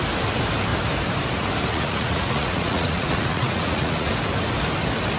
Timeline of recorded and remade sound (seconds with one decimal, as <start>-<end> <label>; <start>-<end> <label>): 0.0-1.7 recorded; 1.7-4.1 remade; 4.1-5.2 recorded

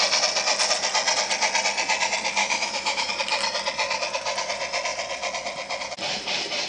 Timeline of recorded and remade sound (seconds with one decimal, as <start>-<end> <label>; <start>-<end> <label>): 0.0-2.4 recorded; 2.4-3.1 remade; 3.1-6.7 recorded

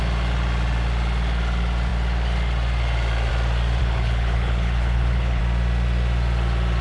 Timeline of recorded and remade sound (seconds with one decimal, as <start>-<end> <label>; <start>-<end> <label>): 0.0-3.8 recorded; 3.8-5.4 remade; 5.4-6.8 recorded

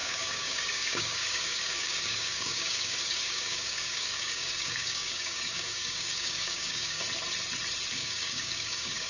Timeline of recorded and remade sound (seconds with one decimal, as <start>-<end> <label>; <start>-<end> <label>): 0.0-7.0 remade; 7.0-7.9 recorded; 7.9-9.1 remade

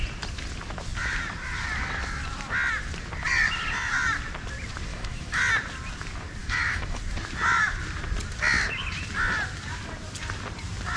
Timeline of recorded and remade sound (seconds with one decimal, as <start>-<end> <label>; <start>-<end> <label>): 0.0-4.9 recorded; 4.9-5.4 remade; 5.4-6.4 recorded; 6.4-7.0 remade; 7.0-11.0 recorded